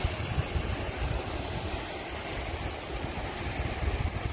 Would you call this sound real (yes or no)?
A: yes